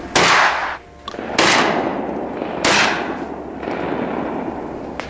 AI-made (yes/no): no